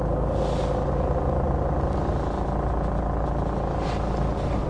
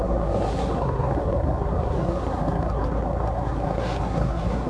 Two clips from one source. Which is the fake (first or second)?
second